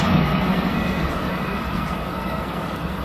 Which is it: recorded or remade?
remade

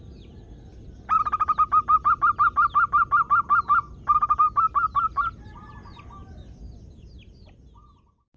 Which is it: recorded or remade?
recorded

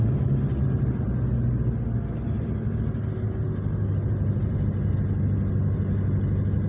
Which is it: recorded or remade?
recorded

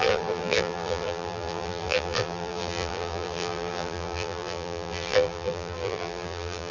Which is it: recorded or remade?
remade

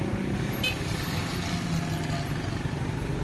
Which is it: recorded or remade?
recorded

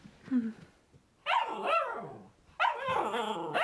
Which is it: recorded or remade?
recorded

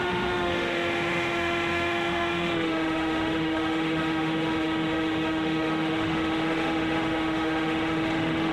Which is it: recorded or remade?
remade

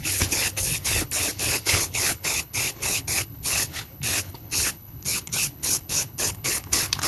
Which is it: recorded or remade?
remade